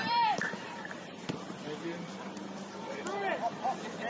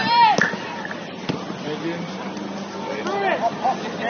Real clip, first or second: second